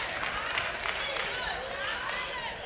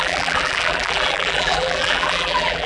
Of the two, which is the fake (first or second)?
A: second